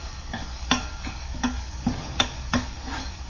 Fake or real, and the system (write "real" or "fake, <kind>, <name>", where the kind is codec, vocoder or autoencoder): fake, codec, DAC